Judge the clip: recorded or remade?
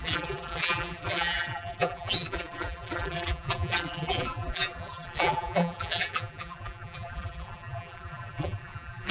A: remade